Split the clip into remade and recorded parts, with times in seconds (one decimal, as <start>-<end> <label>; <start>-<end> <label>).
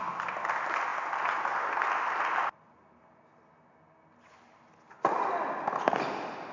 0.0-6.5 recorded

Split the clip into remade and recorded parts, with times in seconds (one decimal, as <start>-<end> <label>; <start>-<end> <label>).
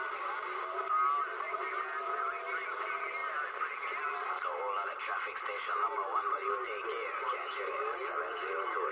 0.0-8.9 recorded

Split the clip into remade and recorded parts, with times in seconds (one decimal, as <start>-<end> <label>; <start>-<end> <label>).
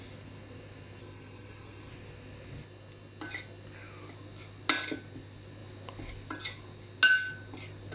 0.0-1.0 recorded; 1.0-1.9 remade; 1.9-7.9 recorded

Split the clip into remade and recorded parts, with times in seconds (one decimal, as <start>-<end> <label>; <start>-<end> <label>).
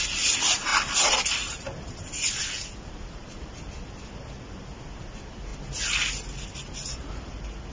0.0-7.7 recorded